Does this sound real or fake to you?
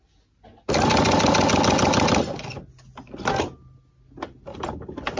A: real